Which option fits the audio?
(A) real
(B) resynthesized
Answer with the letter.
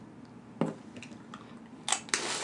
A